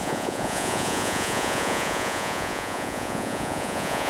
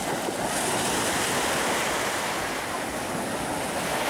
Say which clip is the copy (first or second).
first